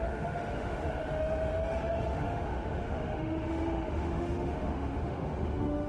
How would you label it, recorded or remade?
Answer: remade